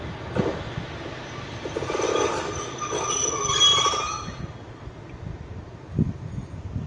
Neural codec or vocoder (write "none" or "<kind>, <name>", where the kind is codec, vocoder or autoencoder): none